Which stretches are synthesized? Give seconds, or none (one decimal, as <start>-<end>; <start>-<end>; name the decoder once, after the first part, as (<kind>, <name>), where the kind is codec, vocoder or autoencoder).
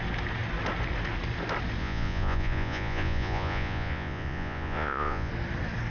1.8-5.3 (vocoder, Vocos)